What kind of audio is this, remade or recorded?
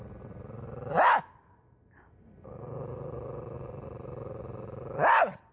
recorded